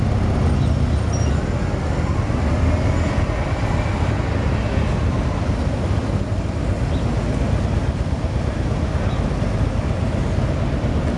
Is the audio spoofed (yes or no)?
no